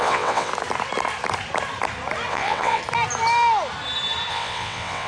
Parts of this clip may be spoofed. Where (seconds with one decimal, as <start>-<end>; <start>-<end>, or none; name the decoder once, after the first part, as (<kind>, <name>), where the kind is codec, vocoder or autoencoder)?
0.0-0.5 (vocoder, WaveNeXt); 2.3-2.8; 4.3-5.1